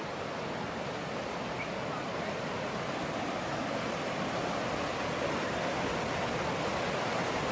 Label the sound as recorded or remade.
recorded